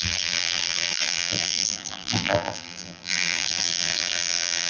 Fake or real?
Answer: fake